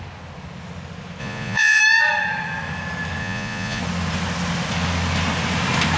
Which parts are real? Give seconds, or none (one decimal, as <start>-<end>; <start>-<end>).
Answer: 0.0-1.2; 1.8-3.2; 3.8-6.0